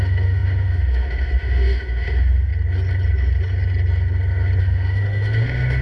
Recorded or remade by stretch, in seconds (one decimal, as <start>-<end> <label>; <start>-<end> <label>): 0.0-2.5 remade; 2.5-4.6 recorded; 4.6-5.8 remade